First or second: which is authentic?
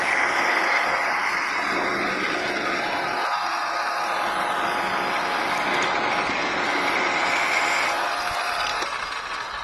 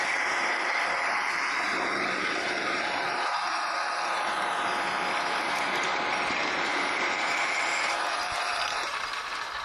first